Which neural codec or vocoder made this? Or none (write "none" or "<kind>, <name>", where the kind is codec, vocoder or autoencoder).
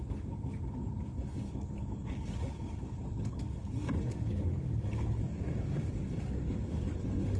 codec, DAC